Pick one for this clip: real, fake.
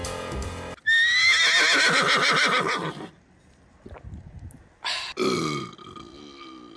real